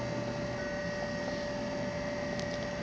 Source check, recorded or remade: recorded